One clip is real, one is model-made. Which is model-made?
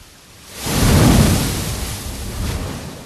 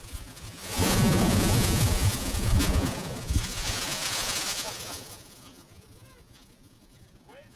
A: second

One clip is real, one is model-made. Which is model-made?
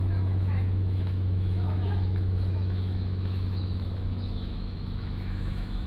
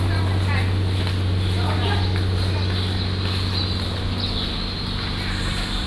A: first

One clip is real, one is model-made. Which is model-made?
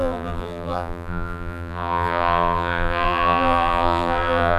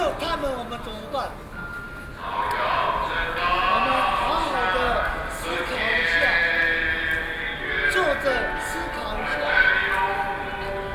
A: first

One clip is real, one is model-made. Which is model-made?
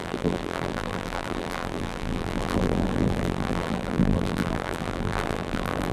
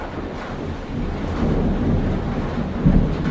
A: first